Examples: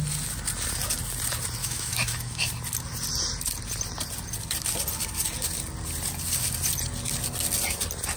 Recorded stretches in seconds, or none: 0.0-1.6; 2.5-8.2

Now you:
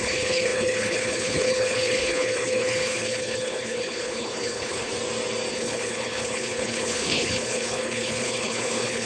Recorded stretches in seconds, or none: 4.9-5.5